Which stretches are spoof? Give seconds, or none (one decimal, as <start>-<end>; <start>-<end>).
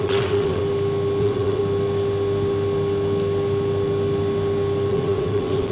0.0-0.6; 1.2-1.6; 4.9-5.7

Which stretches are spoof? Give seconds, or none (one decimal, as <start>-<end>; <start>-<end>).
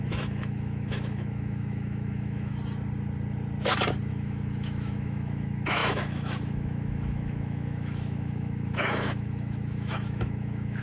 0.0-2.5; 4.1-10.8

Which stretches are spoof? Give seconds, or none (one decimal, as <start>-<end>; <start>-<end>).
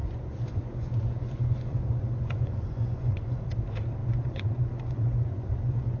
0.0-3.4; 4.0-6.0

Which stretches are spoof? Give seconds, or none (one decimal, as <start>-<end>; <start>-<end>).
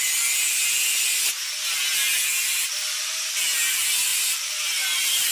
4.1-5.3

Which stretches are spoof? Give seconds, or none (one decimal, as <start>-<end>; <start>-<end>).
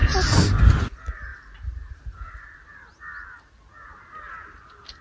none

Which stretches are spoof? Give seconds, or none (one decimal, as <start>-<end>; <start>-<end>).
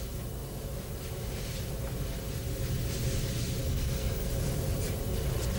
3.6-4.3